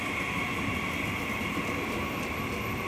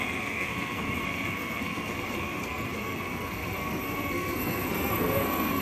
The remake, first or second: second